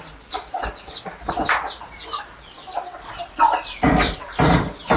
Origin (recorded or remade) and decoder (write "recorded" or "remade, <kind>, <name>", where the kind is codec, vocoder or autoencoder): recorded